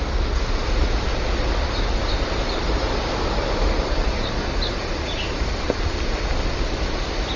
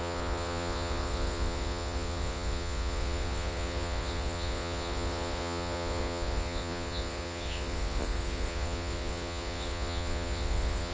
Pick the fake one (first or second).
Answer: second